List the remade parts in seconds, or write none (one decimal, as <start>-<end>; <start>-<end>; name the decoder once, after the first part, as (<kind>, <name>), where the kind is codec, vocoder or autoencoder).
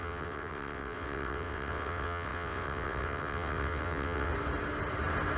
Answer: 0.0-4.3 (vocoder, WaveNeXt)